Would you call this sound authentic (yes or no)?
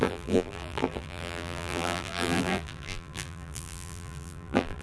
no